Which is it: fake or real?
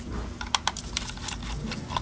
real